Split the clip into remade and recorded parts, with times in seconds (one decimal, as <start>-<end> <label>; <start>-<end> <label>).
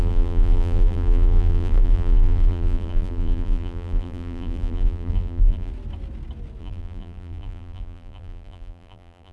0.0-5.7 remade; 5.7-6.6 recorded; 6.6-9.3 remade